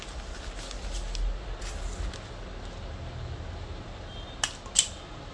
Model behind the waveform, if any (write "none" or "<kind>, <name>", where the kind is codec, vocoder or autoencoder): none